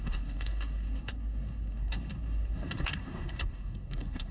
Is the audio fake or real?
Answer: fake